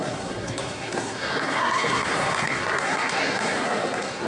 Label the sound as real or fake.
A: fake